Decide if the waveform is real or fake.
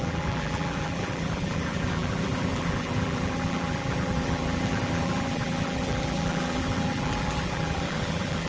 fake